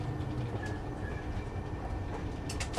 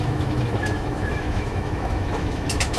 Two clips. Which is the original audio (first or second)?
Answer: first